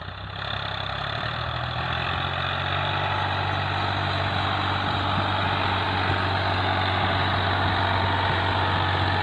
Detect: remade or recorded recorded